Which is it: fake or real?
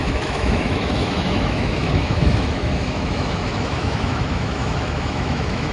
fake